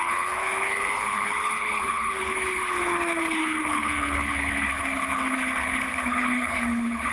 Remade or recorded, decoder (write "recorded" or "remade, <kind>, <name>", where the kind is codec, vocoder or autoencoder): remade, codec, HILCodec